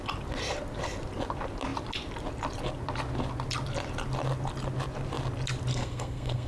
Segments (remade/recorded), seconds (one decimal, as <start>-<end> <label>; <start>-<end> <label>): 0.0-5.7 recorded; 5.7-6.5 remade